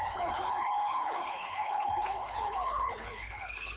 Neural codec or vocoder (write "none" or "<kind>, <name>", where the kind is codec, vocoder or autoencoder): codec, HILCodec